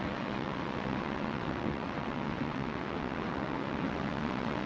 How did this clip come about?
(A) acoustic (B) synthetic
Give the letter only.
B